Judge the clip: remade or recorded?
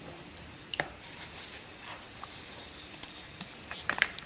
remade